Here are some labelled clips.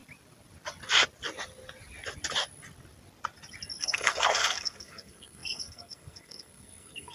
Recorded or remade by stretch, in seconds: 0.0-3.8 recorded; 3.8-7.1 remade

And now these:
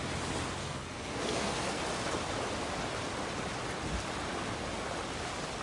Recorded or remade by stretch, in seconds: 0.0-0.6 recorded; 0.6-1.8 remade; 1.8-5.6 recorded

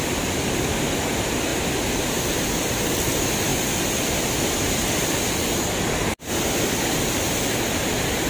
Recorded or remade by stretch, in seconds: 0.0-8.3 recorded

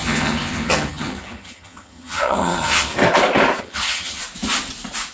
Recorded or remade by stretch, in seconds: 0.0-2.9 remade; 2.9-3.6 recorded; 3.6-4.2 remade; 4.2-5.1 recorded

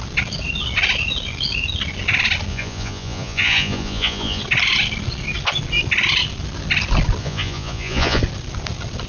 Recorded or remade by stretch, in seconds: 0.0-2.5 recorded; 2.5-4.4 remade; 4.4-7.2 recorded; 7.2-8.2 remade; 8.2-9.1 recorded

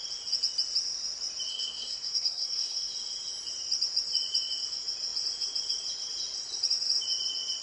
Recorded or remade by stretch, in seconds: 0.0-1.5 recorded; 1.5-2.9 remade; 2.9-7.6 recorded